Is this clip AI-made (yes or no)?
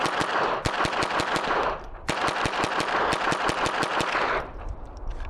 no